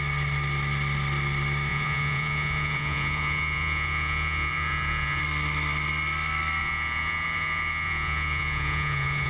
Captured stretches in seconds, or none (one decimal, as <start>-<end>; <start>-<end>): 0.0-1.7; 5.2-6.6